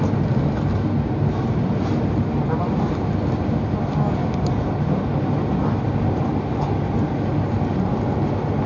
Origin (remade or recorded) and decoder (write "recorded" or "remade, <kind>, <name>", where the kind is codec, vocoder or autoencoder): recorded